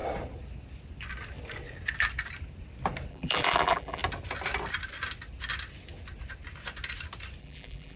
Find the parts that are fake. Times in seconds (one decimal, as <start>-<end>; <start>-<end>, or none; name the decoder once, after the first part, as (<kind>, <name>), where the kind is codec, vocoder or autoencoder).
3.1-4.0 (vocoder, BigVGAN v2); 7.4-8.0